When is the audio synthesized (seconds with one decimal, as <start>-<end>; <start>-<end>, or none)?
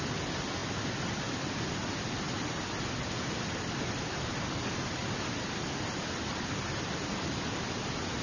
5.0-6.3